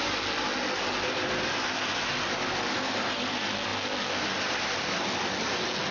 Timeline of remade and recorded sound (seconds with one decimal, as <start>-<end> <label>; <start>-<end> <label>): 0.0-5.9 recorded